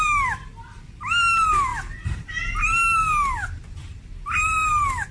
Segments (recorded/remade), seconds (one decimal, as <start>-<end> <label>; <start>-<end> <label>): 0.0-5.1 recorded